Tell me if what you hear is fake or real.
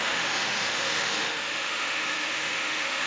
fake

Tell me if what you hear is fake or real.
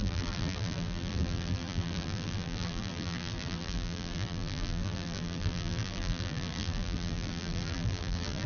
fake